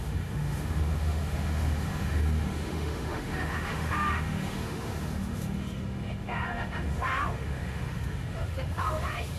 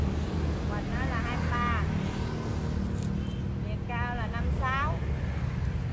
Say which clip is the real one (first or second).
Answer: second